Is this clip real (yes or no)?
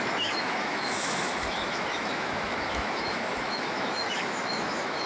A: no